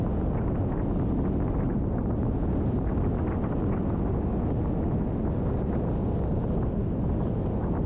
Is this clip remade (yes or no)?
no